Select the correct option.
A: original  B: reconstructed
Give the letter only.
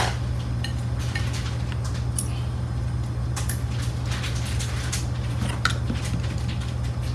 A